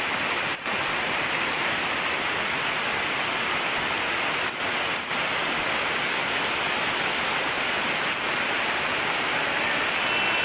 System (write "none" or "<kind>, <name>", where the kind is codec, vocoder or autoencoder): none